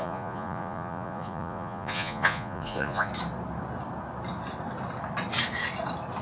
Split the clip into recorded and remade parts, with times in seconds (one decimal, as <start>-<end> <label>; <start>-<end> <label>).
0.0-3.1 remade; 3.1-6.2 recorded